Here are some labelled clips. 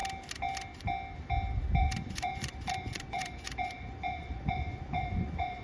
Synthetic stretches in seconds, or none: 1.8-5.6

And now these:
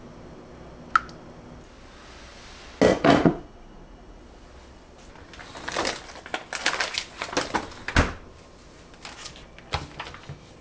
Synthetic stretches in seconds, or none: 2.9-4.2

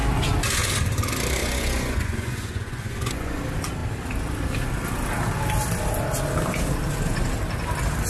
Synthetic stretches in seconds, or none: 1.4-3.4

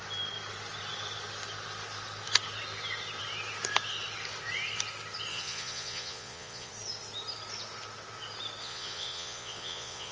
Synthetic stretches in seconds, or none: 5.3-6.7; 8.6-10.1

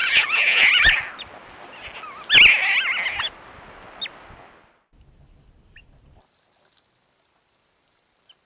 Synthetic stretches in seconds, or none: 0.0-1.0

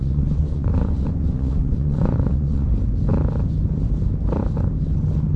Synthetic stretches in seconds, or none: 0.0-2.7

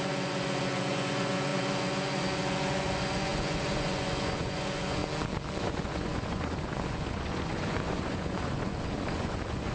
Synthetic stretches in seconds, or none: 0.0-5.0; 5.6-9.7